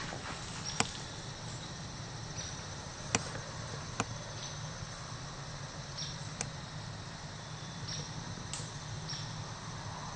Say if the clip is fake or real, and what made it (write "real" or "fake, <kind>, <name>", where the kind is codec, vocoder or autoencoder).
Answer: real